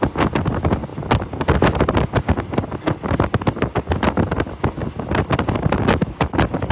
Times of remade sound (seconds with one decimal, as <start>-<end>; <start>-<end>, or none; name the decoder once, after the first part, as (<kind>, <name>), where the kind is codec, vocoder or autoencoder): none